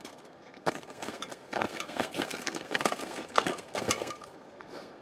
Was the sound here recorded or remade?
remade